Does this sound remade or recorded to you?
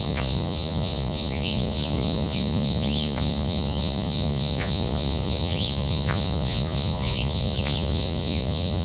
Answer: remade